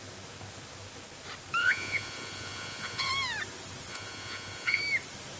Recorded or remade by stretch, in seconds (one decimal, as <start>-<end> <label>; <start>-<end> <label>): 0.0-1.6 recorded; 1.6-3.1 remade; 3.1-3.9 recorded; 3.9-4.8 remade; 4.8-5.4 recorded